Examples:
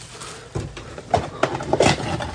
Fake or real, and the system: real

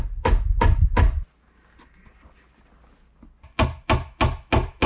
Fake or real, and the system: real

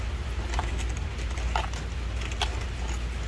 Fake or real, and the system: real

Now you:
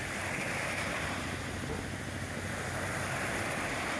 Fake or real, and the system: real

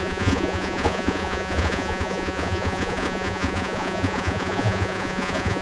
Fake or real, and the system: fake, vocoder, Vocos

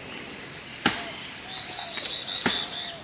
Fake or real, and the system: real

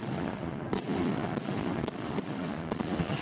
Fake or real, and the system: fake, vocoder, Vocos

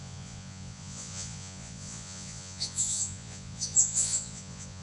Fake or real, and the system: fake, vocoder, Vocos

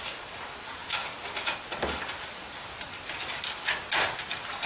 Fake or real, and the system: real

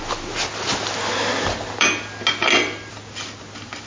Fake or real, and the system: real